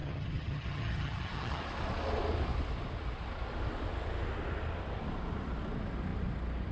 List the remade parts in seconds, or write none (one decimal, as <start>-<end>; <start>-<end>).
0.0-1.6